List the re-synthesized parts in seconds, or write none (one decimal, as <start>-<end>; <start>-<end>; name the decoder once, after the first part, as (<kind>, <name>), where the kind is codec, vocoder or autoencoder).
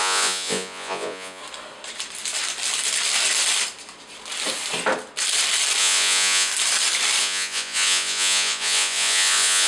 0.0-1.4 (vocoder, Vocos); 5.8-6.5; 7.2-9.7